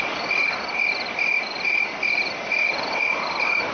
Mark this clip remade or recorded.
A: recorded